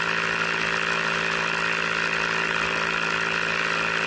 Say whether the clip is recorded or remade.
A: recorded